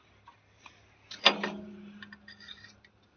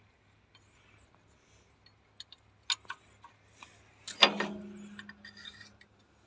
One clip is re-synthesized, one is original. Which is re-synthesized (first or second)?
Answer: first